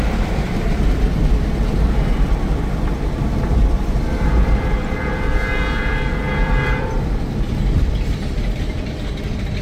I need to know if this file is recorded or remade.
remade